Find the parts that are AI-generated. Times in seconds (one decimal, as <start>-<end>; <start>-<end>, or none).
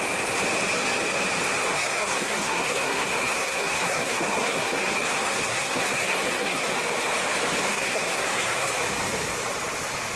1.7-6.7; 7.7-8.7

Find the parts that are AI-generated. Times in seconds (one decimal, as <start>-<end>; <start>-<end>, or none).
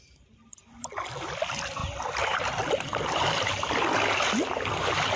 none